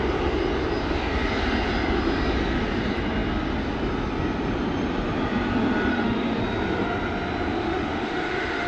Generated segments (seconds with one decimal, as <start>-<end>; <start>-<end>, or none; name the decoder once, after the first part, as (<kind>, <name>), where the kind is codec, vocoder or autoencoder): 5.9-6.4 (autoencoder, DAC-VAE); 7.6-8.7